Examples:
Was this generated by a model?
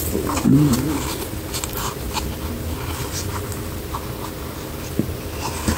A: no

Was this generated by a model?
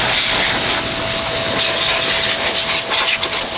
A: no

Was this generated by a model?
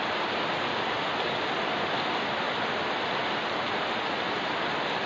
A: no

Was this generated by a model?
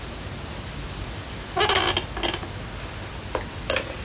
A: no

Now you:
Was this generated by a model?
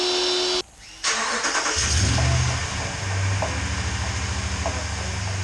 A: no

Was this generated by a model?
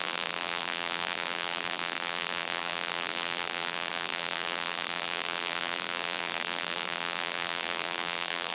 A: yes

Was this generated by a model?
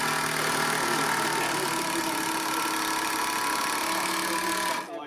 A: no